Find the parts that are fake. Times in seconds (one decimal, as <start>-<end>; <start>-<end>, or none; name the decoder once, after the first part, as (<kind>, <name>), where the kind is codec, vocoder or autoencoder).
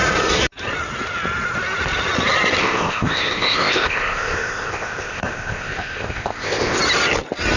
2.6-6.8 (codec, ZipCodec)